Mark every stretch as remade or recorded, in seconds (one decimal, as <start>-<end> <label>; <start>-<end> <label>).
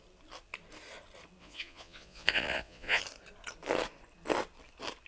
0.0-1.4 recorded; 1.4-3.0 remade; 3.0-5.1 recorded